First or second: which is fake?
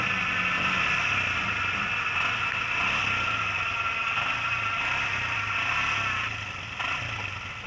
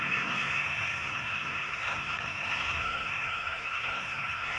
second